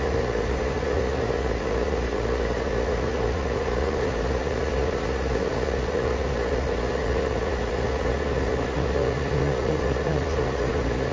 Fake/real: fake